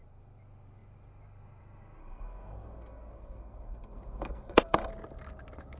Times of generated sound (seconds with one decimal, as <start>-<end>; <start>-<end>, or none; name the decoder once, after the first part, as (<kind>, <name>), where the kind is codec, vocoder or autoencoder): 2.0-4.9 (codec, SNAC)